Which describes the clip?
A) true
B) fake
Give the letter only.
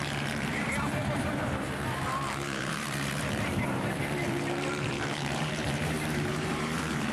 B